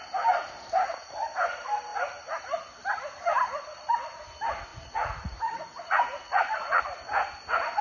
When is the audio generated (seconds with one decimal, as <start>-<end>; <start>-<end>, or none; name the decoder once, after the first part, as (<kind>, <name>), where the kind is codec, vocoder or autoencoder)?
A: 4.7-6.8 (vocoder, Vocos)